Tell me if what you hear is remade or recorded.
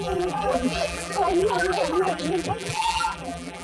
remade